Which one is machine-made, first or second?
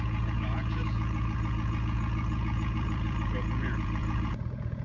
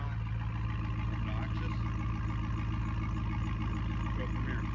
first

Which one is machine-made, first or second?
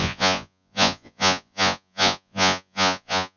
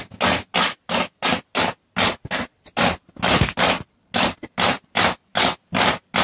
first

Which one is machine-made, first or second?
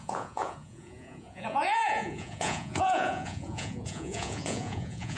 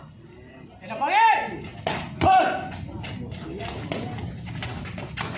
first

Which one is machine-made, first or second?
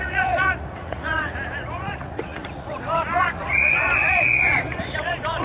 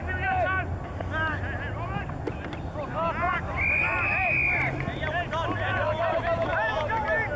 first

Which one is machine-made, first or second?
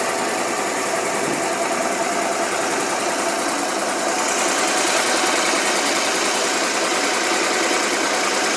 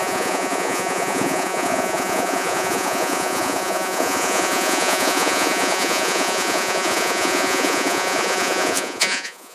second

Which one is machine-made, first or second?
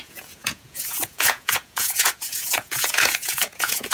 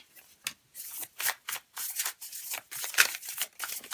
first